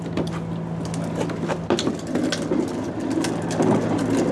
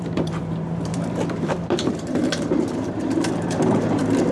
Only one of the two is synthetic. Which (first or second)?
second